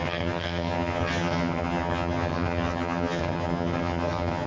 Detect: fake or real fake